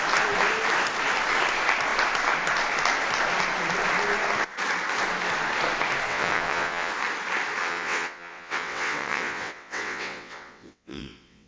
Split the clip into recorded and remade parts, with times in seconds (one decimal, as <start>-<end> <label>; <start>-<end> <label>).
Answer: 0.0-6.1 recorded; 6.1-6.9 remade; 6.9-7.6 recorded; 7.6-11.5 remade